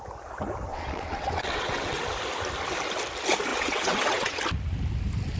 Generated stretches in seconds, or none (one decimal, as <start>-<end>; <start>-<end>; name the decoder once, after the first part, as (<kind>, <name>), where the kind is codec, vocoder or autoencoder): 0.7-2.0 (vocoder, WaveNeXt); 3.5-4.4